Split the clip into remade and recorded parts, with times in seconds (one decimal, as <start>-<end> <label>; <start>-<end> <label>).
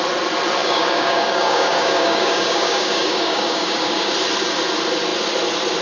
0.0-0.6 recorded; 0.6-4.1 remade; 4.1-5.8 recorded